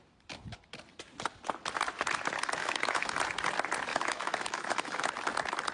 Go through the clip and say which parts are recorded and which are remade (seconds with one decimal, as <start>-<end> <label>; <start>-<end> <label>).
0.0-2.6 recorded; 2.6-3.2 remade; 3.2-3.9 recorded; 3.9-5.1 remade; 5.1-5.7 recorded